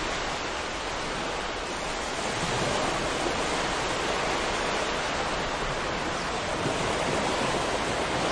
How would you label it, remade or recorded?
recorded